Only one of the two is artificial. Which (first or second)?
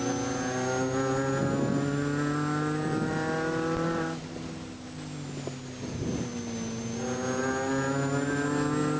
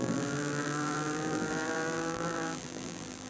second